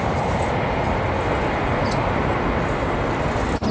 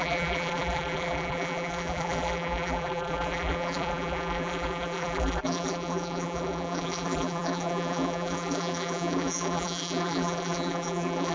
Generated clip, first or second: second